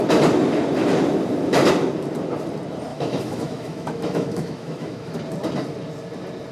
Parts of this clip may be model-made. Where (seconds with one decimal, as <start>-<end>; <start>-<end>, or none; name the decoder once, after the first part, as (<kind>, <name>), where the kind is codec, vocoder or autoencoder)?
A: 2.9-5.2 (autoencoder, DAC-VAE)